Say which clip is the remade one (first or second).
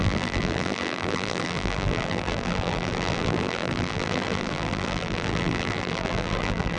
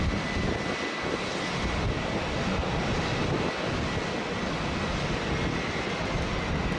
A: first